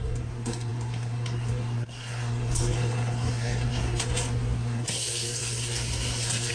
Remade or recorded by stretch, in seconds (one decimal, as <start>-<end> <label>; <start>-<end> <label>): 0.0-6.5 remade